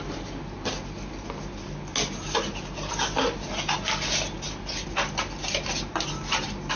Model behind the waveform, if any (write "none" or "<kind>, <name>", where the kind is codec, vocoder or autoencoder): none